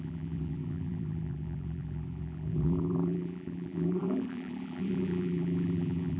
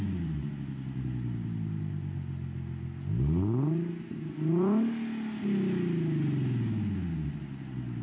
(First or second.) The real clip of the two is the second